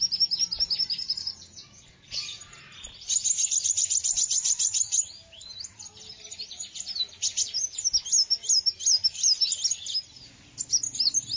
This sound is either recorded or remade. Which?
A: recorded